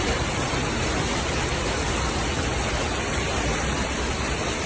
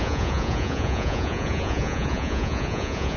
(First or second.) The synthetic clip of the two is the second